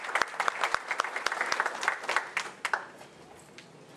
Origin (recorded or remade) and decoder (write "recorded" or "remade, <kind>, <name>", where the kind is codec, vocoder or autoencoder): recorded